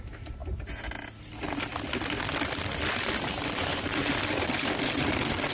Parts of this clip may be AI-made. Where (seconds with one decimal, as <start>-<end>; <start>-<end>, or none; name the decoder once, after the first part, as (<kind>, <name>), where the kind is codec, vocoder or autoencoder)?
none